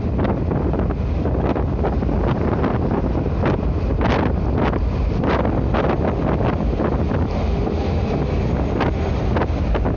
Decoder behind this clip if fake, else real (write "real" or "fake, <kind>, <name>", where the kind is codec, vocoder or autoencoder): real